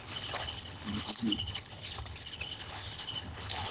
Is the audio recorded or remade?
remade